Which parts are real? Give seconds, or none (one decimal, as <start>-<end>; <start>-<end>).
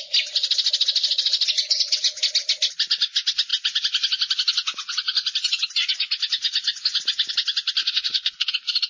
0.0-7.8; 8.5-8.9